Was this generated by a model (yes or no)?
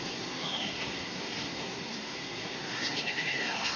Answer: yes